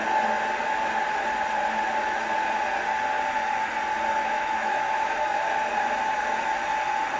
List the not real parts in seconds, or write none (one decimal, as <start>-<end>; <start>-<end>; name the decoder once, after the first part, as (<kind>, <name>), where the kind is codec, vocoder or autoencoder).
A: 4.1-5.7 (autoencoder, DAC-VAE)